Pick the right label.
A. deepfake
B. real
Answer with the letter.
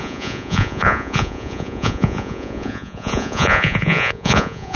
A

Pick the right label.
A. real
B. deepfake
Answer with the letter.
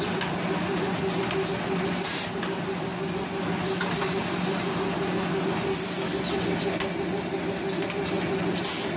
A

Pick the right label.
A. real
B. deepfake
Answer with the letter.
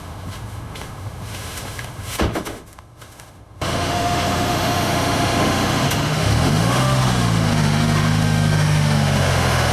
B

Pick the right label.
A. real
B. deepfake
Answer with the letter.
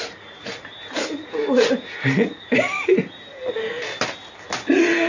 A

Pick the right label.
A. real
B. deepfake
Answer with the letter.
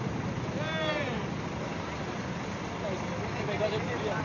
A